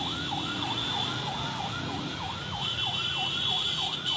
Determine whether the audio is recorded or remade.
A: remade